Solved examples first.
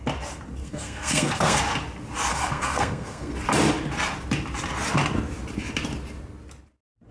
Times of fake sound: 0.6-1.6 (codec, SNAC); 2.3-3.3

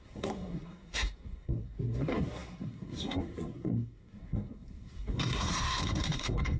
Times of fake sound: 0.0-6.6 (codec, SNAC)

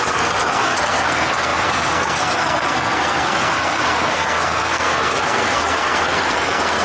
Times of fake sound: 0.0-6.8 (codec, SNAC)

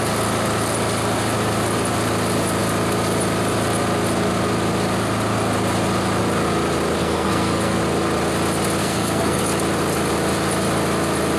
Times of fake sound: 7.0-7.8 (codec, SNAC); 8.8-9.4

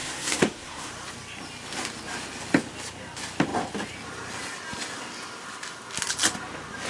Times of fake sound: 0.0-0.9 (codec, SNAC)

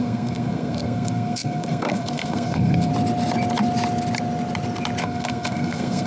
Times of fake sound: 0.0-2.9 (codec, SNAC); 5.0-6.1